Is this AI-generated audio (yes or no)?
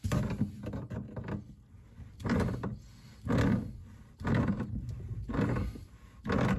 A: no